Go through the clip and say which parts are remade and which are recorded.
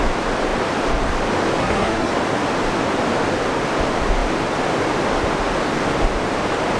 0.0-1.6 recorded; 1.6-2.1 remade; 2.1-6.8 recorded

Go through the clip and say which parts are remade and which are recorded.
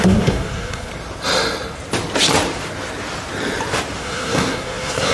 0.0-0.9 remade; 0.9-4.0 recorded; 4.0-5.1 remade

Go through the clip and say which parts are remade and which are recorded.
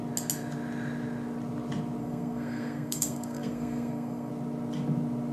0.0-2.0 recorded; 2.0-4.3 remade; 4.3-5.3 recorded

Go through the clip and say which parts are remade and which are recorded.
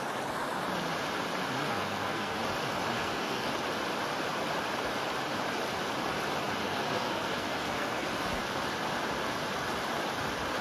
0.0-1.7 recorded; 1.7-2.4 remade; 2.4-2.9 recorded; 2.9-3.5 remade; 3.5-6.6 recorded; 6.6-8.4 remade; 8.4-10.6 recorded